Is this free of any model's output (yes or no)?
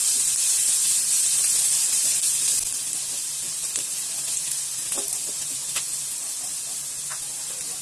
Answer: yes